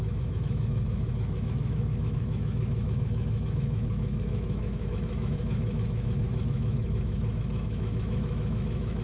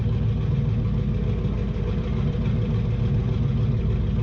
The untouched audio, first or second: second